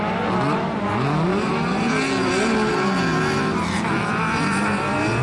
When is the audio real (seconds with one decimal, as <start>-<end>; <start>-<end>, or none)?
0.0-5.2